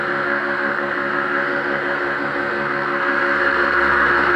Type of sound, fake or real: fake